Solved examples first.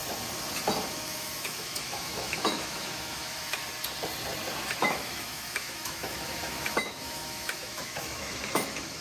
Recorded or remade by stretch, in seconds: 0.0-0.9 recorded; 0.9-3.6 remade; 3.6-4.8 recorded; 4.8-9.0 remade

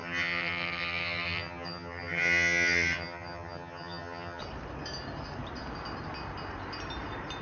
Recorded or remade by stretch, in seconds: 0.0-4.4 remade; 4.4-7.4 recorded